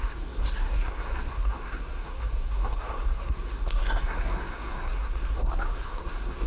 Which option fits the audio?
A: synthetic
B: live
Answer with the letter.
A